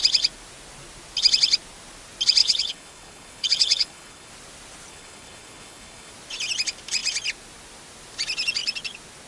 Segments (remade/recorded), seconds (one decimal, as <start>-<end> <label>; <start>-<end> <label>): 0.0-2.4 recorded; 2.4-4.3 remade; 4.3-4.9 recorded; 4.9-6.1 remade; 6.1-9.3 recorded